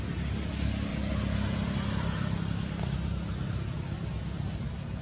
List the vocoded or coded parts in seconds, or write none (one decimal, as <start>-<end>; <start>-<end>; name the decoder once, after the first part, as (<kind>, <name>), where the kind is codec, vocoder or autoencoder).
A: none